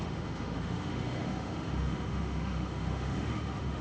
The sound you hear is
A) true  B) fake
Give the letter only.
B